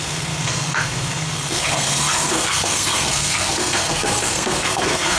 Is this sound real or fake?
fake